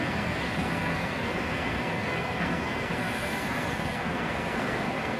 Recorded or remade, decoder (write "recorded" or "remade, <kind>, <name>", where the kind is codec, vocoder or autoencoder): remade, codec, SNAC